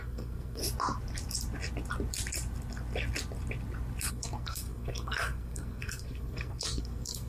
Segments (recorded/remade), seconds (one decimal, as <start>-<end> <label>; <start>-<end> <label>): 0.0-0.6 remade; 0.6-4.1 recorded; 4.1-7.3 remade